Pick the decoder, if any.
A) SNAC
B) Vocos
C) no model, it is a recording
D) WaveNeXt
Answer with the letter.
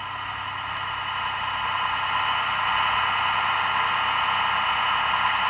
C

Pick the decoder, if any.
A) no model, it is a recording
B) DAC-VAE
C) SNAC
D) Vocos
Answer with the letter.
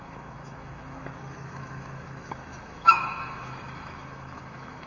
B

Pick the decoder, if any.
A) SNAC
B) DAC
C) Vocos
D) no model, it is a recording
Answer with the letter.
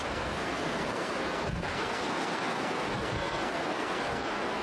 A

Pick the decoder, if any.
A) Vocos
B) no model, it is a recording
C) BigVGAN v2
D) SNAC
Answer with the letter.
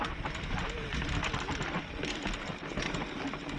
B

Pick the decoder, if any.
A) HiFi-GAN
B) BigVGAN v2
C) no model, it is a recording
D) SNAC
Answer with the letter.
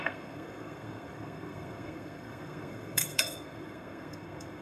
D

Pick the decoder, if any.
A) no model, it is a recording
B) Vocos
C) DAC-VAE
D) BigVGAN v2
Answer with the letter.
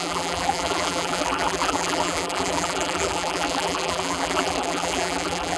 D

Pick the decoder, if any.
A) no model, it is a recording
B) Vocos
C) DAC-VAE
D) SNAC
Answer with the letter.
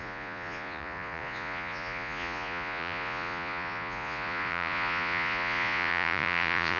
B